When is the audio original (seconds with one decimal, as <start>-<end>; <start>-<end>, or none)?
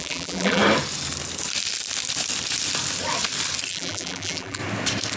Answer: 0.6-3.7; 4.6-5.2